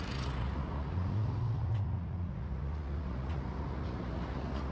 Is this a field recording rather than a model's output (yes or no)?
no